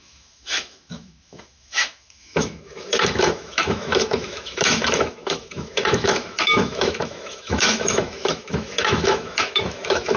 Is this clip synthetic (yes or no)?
yes